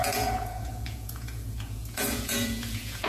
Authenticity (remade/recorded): remade